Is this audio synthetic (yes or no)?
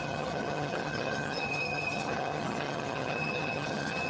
yes